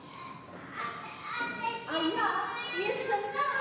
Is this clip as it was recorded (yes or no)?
yes